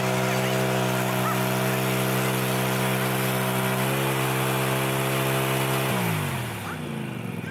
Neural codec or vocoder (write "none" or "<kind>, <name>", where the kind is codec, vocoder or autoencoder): none